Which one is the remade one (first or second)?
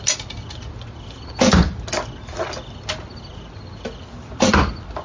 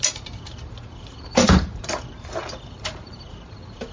second